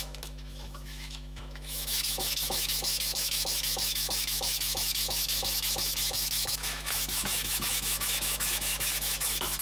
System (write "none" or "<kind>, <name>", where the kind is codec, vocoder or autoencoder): autoencoder, DAC-VAE